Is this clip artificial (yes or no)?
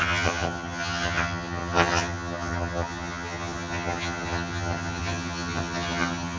yes